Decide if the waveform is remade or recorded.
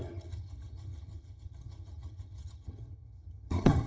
remade